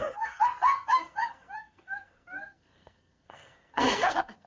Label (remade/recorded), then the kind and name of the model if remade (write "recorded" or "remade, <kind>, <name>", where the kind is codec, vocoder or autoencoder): remade, codec, SNAC